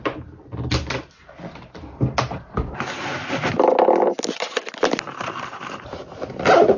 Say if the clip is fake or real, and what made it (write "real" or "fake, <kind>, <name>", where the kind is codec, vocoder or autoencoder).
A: real